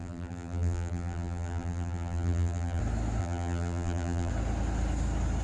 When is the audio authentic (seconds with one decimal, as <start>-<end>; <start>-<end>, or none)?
2.8-3.2; 4.3-5.4